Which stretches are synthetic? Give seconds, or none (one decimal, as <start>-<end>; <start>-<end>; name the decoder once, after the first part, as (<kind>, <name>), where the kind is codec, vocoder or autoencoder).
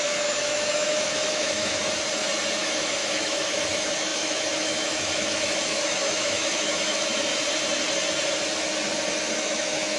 0.0-1.8 (autoencoder, DAC-VAE); 2.6-7.3; 9.3-10.0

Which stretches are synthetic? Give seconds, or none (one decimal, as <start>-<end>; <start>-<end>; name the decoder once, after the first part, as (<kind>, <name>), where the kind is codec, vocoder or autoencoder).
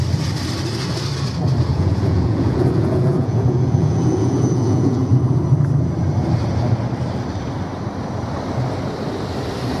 1.7-5.1 (vocoder, Vocos)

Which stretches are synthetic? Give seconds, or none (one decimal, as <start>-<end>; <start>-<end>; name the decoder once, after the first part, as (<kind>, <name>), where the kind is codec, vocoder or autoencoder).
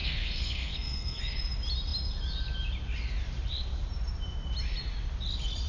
0.0-1.2 (codec, SNAC)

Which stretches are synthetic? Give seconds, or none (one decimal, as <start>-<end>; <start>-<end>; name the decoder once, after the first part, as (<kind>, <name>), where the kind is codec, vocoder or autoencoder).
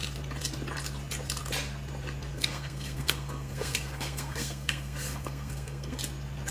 2.3-6.0 (codec, SNAC)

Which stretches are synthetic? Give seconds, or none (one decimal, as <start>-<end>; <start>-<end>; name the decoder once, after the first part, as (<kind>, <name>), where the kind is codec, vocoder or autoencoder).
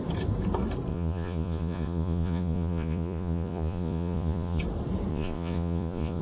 0.9-4.6 (vocoder, Vocos); 5.1-6.2